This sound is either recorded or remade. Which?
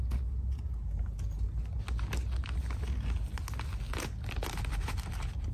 recorded